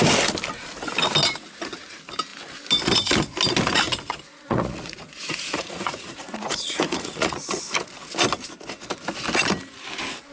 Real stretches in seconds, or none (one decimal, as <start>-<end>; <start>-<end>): 0.0-4.3; 7.6-10.3